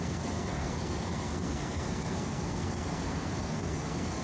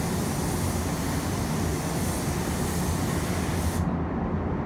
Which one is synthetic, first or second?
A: first